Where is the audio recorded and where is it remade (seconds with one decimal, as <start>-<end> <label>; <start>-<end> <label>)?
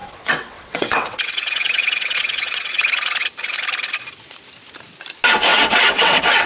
0.0-2.8 remade; 2.8-5.5 recorded; 5.5-6.5 remade